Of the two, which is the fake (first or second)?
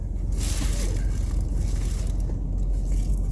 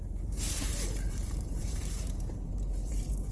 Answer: second